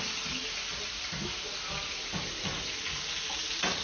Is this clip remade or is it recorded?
recorded